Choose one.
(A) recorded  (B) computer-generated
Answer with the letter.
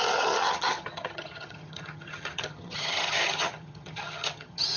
B